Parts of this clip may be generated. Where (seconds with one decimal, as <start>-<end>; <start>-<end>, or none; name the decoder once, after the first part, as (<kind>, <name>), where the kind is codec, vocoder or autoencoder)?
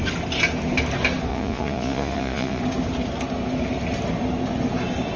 1.3-2.6 (vocoder, Vocos)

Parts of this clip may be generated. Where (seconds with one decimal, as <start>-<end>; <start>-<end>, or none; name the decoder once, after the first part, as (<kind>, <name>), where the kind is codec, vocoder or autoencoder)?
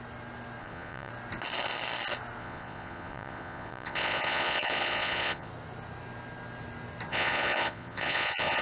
0.6-1.1 (vocoder, Vocos); 2.4-5.5; 7.1-8.6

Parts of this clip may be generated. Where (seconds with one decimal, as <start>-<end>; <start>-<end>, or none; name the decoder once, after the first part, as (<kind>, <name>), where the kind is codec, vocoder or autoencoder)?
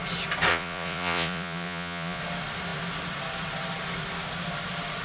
0.5-2.2 (vocoder, Vocos)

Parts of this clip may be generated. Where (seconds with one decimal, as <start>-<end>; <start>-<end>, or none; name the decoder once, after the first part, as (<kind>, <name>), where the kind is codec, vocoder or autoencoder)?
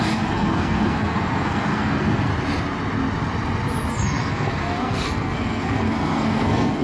0.0-2.3 (codec, SNAC); 3.9-6.8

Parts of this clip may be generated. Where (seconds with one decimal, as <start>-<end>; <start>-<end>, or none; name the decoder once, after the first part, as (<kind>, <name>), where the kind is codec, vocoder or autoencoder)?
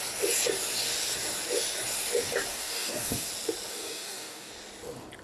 2.5-3.3 (codec, DAC); 3.7-4.5